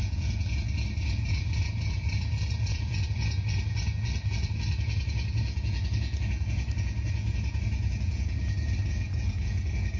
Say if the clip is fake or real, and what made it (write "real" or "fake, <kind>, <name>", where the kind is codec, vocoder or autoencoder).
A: fake, vocoder, Vocos